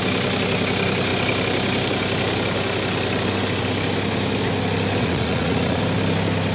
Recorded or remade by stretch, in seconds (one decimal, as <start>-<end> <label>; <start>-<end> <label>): 0.0-5.0 recorded; 5.0-5.8 remade; 5.8-6.5 recorded